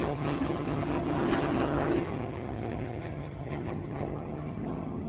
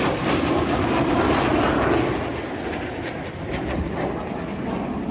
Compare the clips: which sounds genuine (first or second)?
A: second